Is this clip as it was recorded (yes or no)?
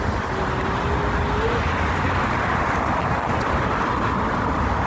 yes